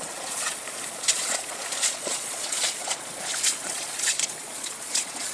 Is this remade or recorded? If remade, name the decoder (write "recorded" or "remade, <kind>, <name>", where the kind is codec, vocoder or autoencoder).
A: remade, vocoder, Vocos